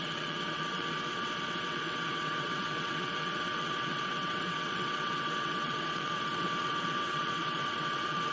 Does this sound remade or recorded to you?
remade